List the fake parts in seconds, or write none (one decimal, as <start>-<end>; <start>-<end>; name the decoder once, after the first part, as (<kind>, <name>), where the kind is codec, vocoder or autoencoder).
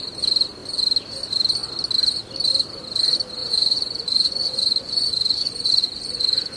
3.4-6.6 (vocoder, Vocos)